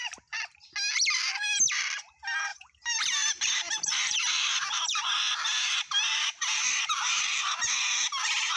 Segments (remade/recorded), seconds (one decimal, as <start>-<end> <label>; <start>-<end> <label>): 0.0-2.5 recorded; 2.5-7.6 remade; 7.6-8.6 recorded